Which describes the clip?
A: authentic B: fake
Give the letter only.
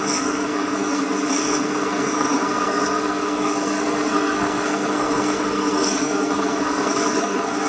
B